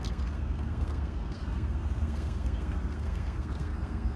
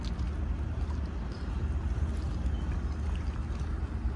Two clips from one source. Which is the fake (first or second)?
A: first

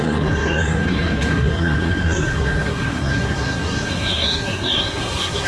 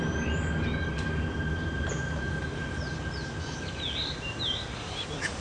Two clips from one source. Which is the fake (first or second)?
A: first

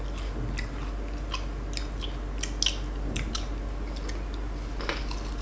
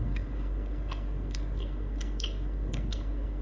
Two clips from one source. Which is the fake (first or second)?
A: second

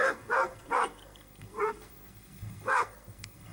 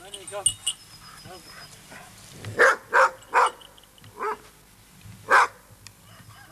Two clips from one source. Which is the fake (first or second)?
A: first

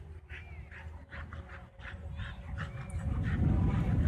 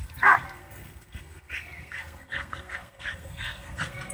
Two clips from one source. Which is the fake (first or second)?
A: second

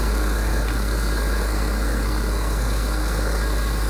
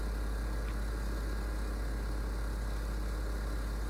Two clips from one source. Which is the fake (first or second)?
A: first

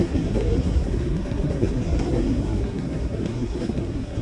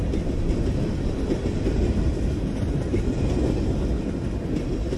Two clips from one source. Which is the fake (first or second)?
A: first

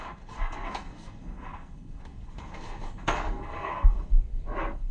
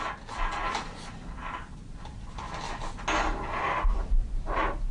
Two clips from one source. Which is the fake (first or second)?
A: first